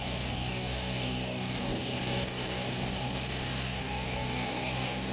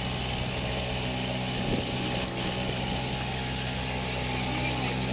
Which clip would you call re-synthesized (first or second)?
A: first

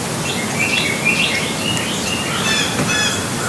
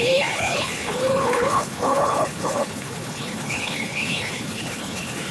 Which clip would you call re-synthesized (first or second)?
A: second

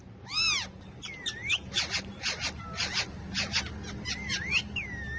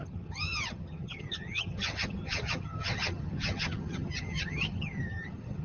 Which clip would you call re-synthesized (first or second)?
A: second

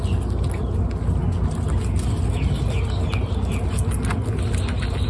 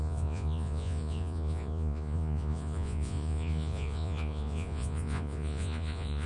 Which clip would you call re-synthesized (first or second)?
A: second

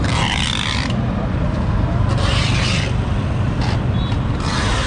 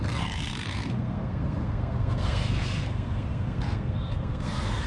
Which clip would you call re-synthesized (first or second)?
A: second